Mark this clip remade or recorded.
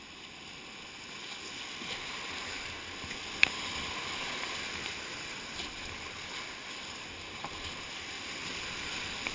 recorded